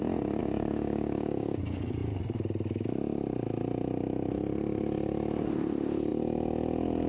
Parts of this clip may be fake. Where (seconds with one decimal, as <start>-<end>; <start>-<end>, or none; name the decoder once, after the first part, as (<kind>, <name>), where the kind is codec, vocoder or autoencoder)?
0.4-1.6 (codec, DAC)